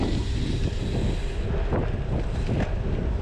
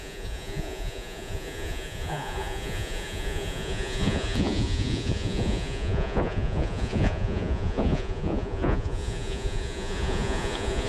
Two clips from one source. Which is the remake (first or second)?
second